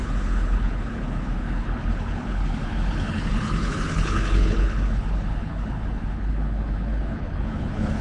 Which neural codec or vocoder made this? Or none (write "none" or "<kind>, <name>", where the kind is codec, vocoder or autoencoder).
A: codec, HILCodec